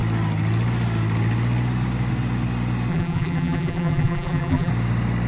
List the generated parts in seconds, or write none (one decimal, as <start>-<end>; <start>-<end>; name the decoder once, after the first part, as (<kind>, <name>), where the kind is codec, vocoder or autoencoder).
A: 2.9-4.7 (vocoder, BigVGAN v2)